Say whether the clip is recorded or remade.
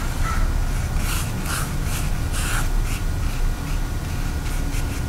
recorded